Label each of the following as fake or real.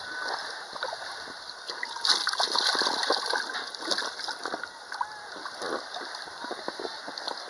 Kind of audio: real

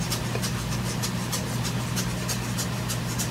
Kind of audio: real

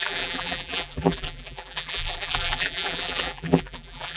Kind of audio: fake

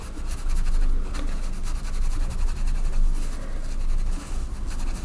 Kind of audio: real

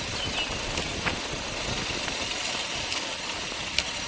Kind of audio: real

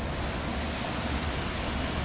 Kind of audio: real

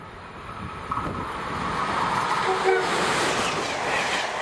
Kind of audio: real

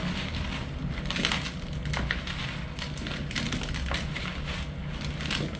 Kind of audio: real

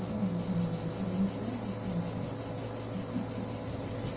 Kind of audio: real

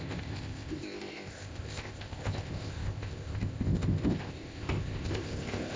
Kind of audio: fake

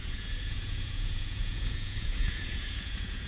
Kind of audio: fake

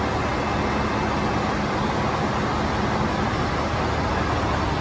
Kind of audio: real